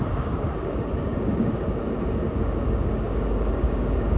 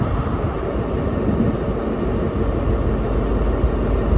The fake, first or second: first